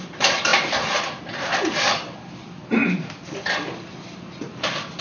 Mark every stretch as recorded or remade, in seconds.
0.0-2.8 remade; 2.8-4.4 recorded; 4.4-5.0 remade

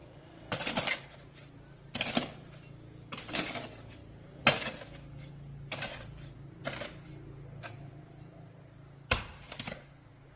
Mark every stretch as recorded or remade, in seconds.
0.0-10.4 recorded